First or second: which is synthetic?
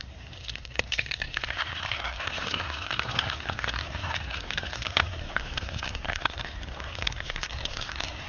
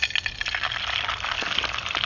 first